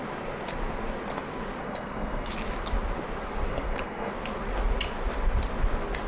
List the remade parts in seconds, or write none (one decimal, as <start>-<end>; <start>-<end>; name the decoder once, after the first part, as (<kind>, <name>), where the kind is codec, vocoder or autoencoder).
1.6-2.3 (codec, SNAC); 3.5-4.1